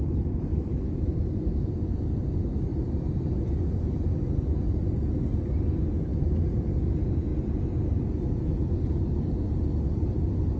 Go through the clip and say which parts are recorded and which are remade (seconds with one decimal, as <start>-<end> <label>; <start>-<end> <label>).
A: 0.0-0.5 recorded; 0.5-2.1 remade; 2.1-10.6 recorded